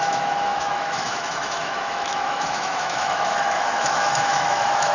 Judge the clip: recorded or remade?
remade